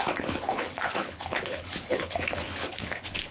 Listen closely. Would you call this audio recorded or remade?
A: remade